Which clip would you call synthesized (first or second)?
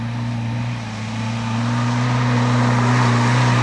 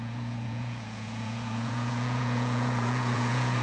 second